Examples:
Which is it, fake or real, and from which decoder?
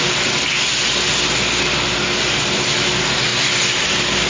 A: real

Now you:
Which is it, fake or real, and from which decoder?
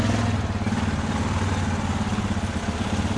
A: real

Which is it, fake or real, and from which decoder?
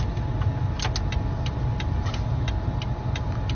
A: real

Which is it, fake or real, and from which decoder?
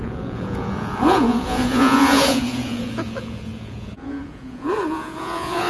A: fake, vocoder, Vocos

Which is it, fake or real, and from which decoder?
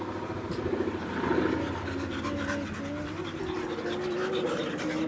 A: real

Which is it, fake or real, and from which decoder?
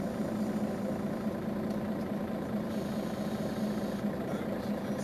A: real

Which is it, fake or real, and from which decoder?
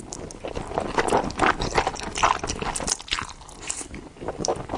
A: real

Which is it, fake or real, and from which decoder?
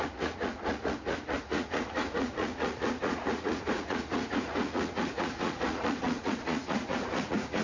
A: fake, vocoder, Vocos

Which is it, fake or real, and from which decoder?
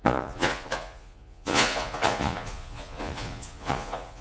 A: fake, vocoder, Vocos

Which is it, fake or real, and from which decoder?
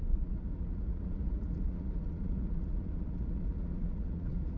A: fake, vocoder, Vocos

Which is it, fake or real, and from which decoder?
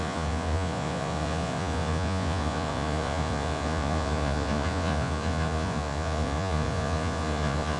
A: fake, vocoder, Vocos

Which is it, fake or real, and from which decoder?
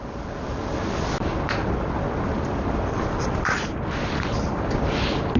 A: real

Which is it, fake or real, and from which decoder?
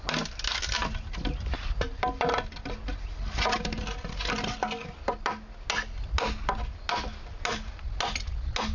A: real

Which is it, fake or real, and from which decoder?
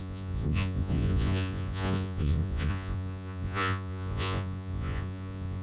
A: fake, vocoder, Vocos